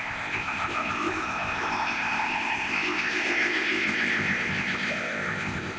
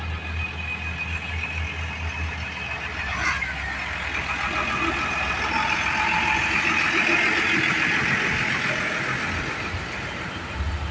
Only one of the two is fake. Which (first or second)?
first